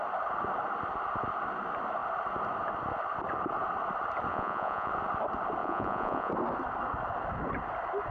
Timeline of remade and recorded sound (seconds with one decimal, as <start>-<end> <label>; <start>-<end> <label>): 0.0-4.3 recorded; 4.3-4.9 remade; 4.9-5.6 recorded; 5.6-6.3 remade; 6.3-8.1 recorded